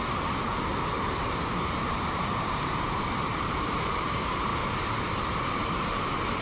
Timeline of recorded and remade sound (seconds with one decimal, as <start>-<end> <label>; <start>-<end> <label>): 0.0-4.5 remade; 4.5-5.0 recorded; 5.0-6.4 remade